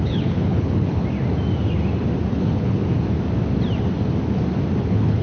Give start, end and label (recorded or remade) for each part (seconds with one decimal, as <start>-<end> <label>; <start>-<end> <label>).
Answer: 0.0-1.0 remade; 1.0-2.3 recorded; 2.3-2.8 remade; 2.8-4.8 recorded; 4.8-5.2 remade